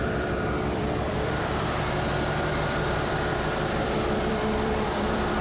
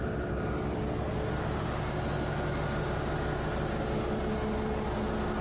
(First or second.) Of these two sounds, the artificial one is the first